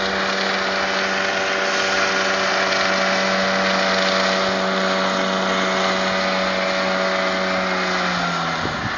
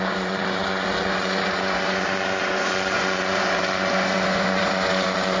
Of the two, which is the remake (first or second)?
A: second